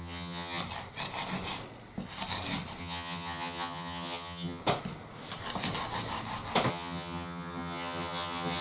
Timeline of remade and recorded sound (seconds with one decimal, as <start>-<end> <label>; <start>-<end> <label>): 0.0-0.6 remade; 0.6-2.8 recorded; 2.8-4.6 remade; 4.6-6.7 recorded; 6.7-8.6 remade